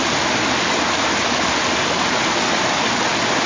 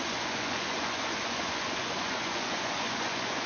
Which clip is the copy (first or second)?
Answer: second